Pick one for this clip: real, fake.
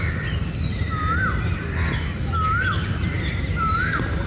fake